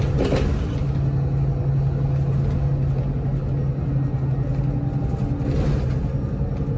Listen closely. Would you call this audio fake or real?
real